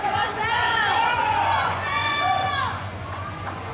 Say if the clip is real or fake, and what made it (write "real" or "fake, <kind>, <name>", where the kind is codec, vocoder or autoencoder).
fake, vocoder, Vocos